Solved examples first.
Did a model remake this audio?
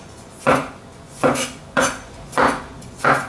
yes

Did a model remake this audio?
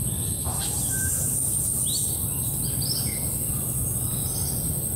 no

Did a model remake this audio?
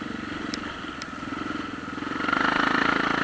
no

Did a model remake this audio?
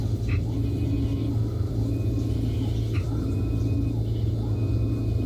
no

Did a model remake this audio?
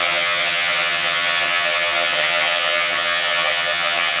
yes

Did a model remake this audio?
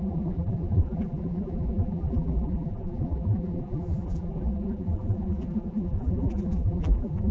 yes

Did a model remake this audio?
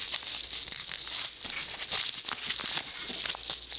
no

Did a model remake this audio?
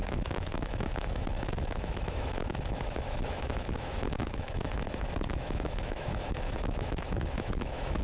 yes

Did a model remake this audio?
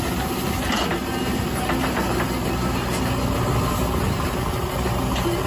no